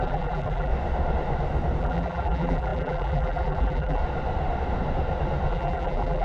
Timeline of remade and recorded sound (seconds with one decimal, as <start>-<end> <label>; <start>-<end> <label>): 0.0-0.7 remade; 0.7-1.8 recorded; 1.8-4.0 remade; 4.0-5.5 recorded; 5.5-6.2 remade